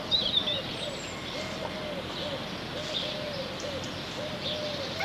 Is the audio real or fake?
fake